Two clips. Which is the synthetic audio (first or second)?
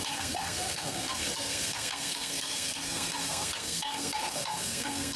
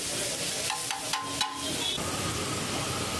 first